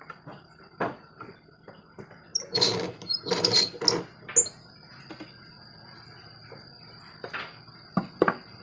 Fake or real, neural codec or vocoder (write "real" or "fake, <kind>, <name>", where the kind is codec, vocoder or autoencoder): real